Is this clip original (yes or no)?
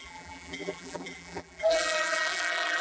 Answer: no